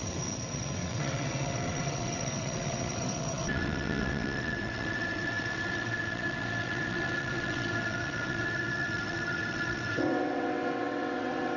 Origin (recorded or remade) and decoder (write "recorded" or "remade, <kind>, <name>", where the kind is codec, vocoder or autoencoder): remade, vocoder, WaveNeXt